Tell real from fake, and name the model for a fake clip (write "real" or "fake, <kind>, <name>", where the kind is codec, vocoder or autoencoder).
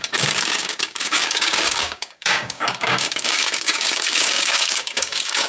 fake, codec, DAC